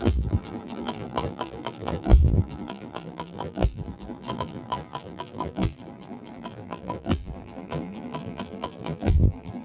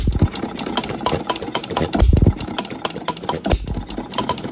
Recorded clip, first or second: second